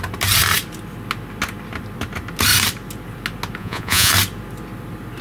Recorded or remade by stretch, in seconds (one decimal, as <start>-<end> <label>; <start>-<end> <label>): 0.0-3.6 recorded; 3.6-4.1 remade; 4.1-5.2 recorded